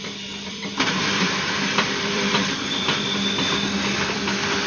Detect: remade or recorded remade